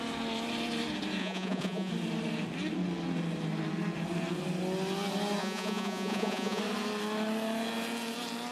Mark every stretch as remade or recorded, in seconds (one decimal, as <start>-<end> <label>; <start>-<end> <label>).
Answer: 0.0-1.2 recorded; 1.2-1.9 remade; 1.9-5.4 recorded; 5.4-6.6 remade; 6.6-8.5 recorded